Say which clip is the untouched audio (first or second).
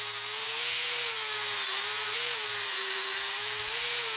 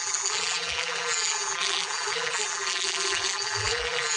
first